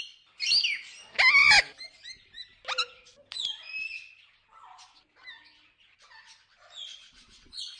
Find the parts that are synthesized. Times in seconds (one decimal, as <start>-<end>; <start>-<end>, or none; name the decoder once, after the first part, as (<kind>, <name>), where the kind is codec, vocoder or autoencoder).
6.9-7.8 (vocoder, Vocos)